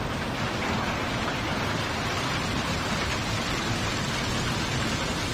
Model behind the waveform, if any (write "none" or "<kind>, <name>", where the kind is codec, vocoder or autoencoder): none